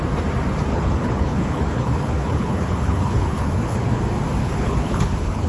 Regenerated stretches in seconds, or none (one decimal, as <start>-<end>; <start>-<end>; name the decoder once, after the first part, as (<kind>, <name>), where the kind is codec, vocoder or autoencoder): 0.7-4.0 (codec, HILCodec); 4.4-5.5